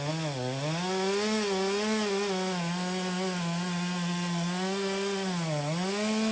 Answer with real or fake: real